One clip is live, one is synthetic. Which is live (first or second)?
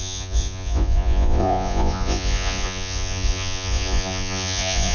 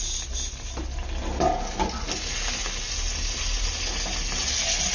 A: second